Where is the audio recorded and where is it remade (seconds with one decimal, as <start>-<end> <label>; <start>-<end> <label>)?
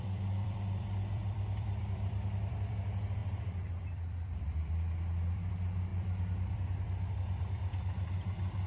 0.0-8.7 remade